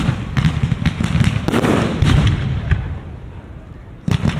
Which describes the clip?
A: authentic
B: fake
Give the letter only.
B